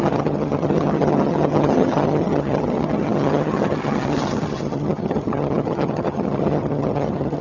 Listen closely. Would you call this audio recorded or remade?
remade